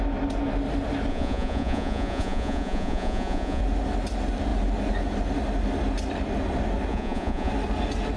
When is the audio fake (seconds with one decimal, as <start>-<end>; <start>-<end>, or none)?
1.1-3.6; 6.9-7.5